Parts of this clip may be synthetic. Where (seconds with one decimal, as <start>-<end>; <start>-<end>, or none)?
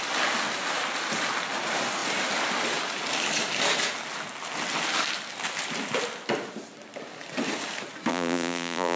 8.1-9.0